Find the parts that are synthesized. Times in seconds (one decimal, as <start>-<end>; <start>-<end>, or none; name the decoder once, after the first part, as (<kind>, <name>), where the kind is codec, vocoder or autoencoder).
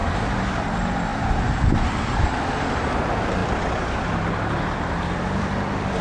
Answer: 0.0-0.6 (vocoder, BigVGAN v2); 1.1-2.9; 3.4-6.0